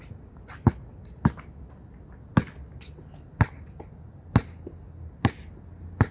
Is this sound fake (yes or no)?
no